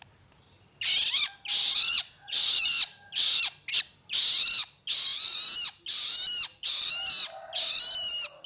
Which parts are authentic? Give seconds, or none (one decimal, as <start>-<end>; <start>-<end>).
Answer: 0.0-1.9; 2.7-8.5